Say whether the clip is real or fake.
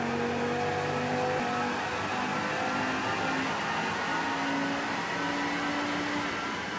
real